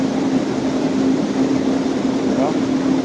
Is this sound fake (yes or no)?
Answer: no